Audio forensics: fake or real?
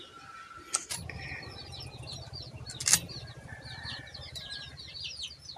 real